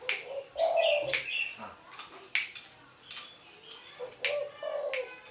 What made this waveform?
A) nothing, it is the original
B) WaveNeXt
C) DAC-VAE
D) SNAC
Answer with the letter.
A